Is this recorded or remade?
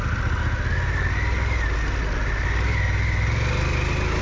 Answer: recorded